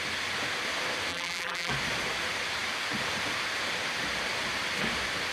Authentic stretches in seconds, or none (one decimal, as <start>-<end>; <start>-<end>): 0.0-1.1; 1.7-5.3